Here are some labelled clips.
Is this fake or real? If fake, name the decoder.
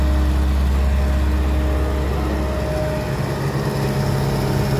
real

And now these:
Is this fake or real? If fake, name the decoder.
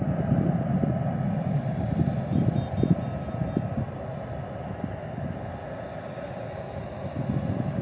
real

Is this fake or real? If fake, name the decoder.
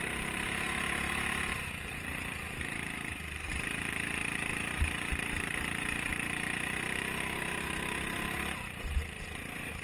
fake, vocoder, BigVGAN v2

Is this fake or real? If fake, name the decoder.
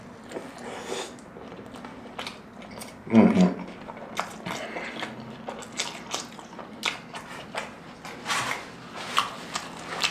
real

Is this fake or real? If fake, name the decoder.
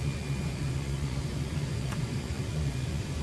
fake, vocoder, Vocos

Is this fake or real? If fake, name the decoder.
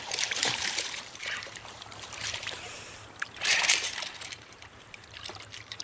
fake, vocoder, BigVGAN v2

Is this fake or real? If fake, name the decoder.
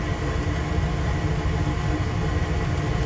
real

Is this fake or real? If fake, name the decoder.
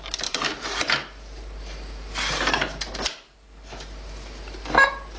fake, vocoder, BigVGAN v2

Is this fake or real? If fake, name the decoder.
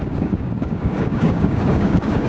fake, codec, DAC